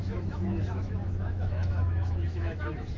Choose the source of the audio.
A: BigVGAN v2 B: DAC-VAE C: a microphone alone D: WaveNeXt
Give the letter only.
B